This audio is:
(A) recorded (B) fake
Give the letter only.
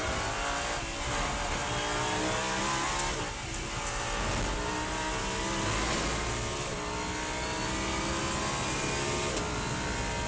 A